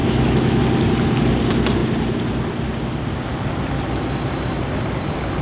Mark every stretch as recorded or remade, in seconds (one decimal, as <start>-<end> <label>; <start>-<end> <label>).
0.0-0.6 remade; 0.6-5.4 recorded